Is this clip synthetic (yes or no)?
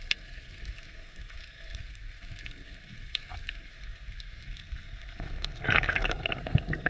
yes